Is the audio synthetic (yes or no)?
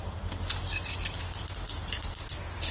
no